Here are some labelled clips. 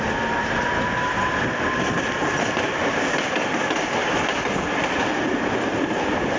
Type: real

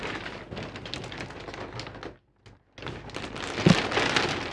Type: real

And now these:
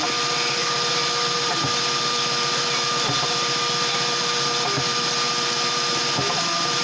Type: real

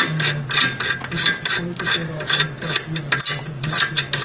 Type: real